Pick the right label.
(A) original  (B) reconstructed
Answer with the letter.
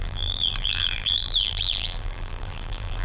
B